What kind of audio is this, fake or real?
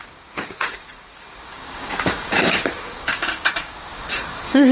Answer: fake